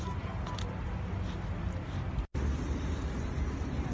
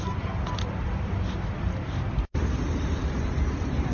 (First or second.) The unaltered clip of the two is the first